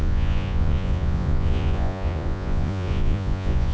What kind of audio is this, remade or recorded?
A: remade